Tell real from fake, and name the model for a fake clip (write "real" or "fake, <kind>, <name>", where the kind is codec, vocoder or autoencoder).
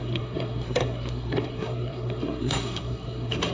fake, codec, SNAC